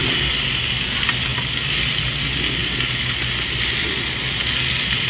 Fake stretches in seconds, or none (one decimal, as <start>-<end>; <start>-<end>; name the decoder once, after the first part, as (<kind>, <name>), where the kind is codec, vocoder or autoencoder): none